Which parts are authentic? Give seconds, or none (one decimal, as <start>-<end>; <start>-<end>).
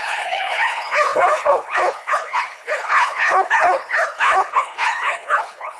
none